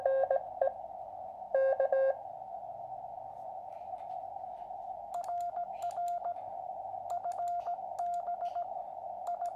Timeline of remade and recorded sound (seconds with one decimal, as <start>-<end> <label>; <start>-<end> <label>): 0.0-9.6 recorded